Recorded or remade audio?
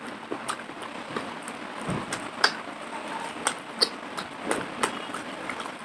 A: recorded